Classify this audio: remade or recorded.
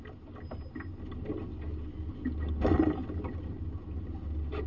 recorded